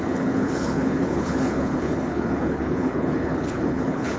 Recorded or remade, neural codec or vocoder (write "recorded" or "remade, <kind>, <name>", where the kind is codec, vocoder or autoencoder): remade, codec, HILCodec